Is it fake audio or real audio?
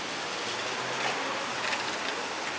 real